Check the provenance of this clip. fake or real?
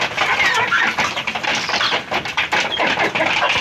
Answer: real